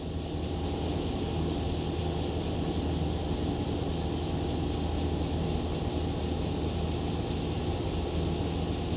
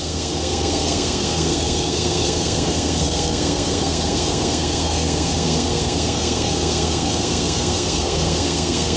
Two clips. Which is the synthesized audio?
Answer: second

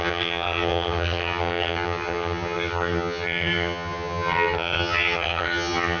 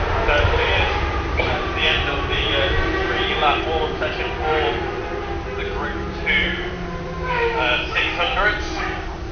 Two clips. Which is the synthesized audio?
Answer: first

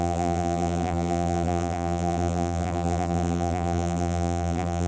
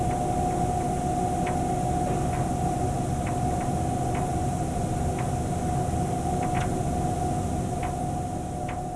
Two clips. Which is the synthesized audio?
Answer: first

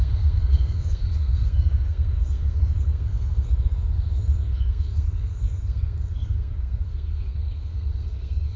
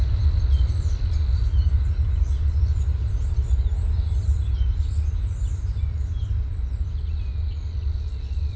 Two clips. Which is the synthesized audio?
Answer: first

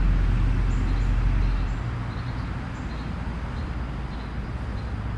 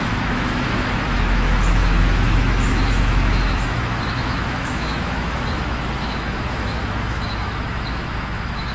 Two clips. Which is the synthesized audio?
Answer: second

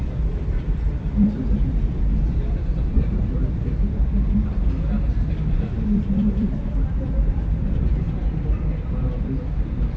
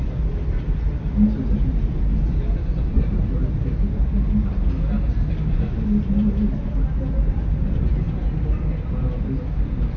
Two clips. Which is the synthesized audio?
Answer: first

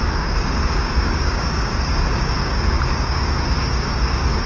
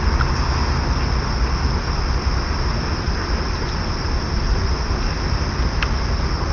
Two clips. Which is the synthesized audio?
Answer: first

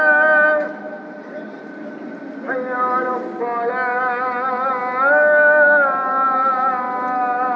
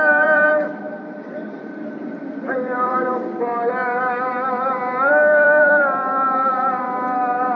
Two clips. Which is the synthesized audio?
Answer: second